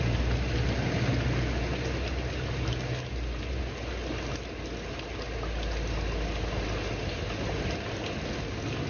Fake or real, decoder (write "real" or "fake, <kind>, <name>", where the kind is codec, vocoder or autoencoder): real